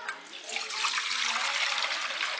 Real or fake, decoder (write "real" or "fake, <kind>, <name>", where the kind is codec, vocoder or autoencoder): real